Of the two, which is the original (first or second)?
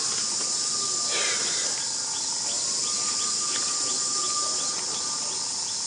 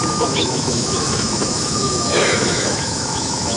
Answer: first